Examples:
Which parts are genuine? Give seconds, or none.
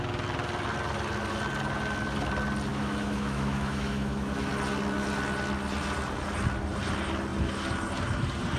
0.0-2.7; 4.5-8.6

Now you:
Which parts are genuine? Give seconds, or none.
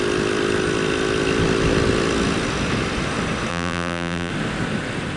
0.0-3.5; 4.3-5.2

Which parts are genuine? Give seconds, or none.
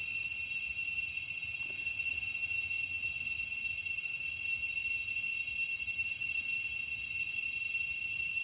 0.0-8.4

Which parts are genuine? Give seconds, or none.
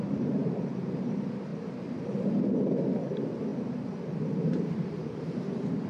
0.0-0.4; 1.0-1.5; 3.0-3.5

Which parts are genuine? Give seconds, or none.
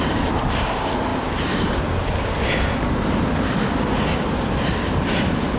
0.0-5.6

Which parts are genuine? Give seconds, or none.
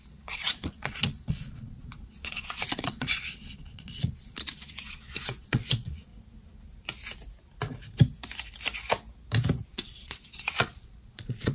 6.1-9.7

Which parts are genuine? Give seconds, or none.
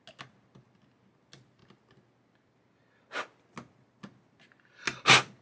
0.0-5.4